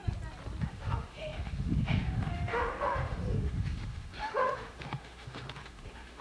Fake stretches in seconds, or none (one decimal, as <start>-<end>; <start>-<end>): 0.6-6.2